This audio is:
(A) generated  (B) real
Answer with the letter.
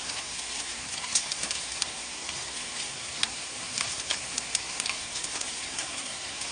A